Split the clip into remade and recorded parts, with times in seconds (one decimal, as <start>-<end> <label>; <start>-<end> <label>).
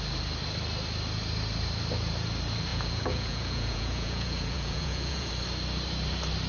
0.0-2.7 recorded; 2.7-5.3 remade; 5.3-6.5 recorded